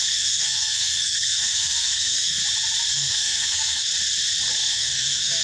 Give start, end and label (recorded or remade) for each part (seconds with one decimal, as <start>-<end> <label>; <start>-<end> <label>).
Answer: 0.0-2.4 remade; 2.4-2.9 recorded; 2.9-3.9 remade; 3.9-4.6 recorded; 4.6-5.4 remade